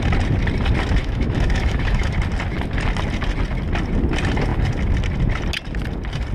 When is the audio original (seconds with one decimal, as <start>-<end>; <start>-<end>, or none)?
0.0-1.0; 2.1-6.3